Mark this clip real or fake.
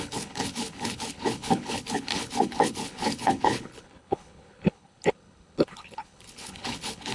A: fake